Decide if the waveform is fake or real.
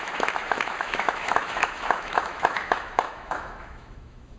fake